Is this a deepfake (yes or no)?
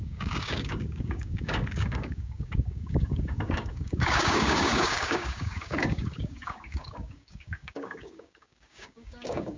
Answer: yes